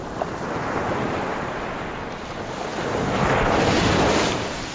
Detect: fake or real real